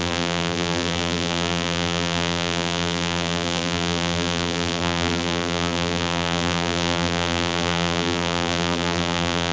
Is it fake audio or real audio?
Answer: fake